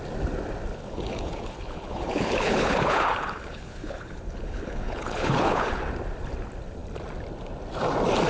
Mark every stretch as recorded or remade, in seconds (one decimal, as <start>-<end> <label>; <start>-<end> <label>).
0.0-0.8 recorded; 0.8-5.8 remade; 5.8-8.3 recorded